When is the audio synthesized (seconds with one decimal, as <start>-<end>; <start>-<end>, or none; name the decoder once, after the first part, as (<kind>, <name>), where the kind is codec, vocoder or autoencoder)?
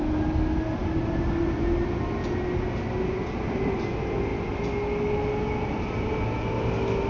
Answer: none